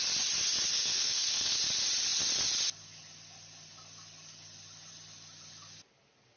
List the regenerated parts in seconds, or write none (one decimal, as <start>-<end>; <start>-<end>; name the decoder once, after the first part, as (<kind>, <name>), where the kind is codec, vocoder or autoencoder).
0.7-1.6 (codec, SNAC)